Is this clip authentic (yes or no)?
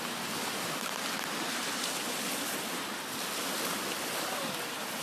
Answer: yes